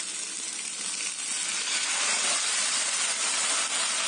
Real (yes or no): yes